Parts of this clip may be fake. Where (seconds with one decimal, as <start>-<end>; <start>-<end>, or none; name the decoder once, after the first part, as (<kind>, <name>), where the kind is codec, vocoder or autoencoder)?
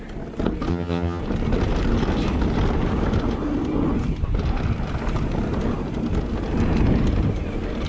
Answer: 0.7-1.2 (vocoder, HiFi-GAN)